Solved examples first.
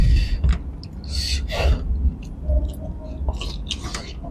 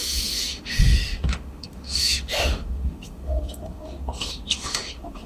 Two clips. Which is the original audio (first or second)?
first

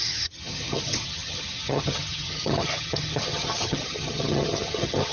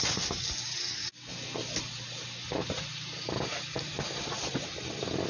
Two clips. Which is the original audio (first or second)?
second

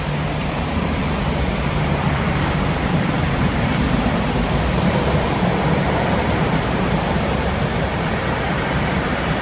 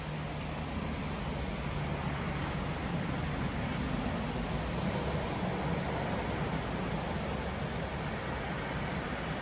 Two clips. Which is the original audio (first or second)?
second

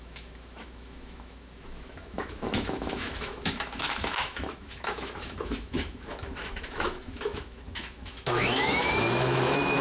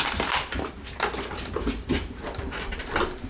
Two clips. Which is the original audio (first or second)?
second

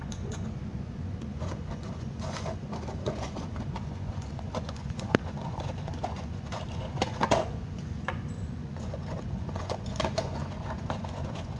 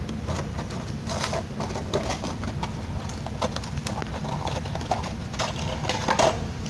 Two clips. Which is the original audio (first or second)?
second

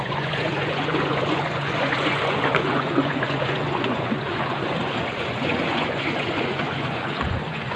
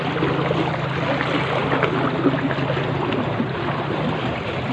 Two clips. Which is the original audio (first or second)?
second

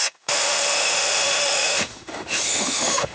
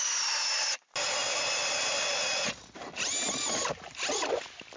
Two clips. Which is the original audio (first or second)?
second